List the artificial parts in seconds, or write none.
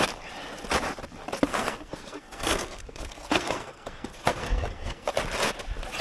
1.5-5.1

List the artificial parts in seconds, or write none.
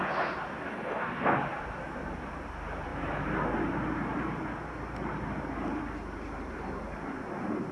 0.7-1.4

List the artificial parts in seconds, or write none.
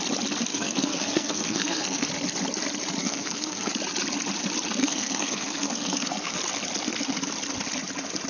0.5-2.1; 3.0-3.7; 4.8-6.4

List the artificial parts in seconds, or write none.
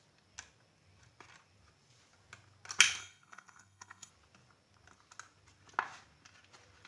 3.0-4.1